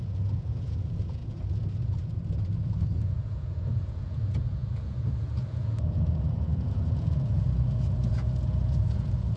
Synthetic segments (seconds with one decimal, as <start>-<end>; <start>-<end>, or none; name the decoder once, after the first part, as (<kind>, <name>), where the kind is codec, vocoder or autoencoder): 0.0-9.4 (vocoder, Vocos)